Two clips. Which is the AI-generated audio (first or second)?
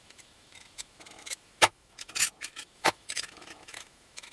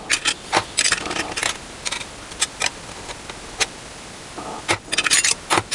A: first